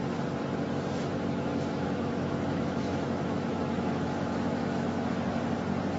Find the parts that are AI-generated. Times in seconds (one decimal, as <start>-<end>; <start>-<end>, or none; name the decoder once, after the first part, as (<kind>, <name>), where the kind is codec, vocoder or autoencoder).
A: 1.5-5.1 (autoencoder, DAC-VAE)